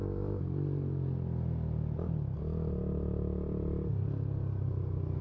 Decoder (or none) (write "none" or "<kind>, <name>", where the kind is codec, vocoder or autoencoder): none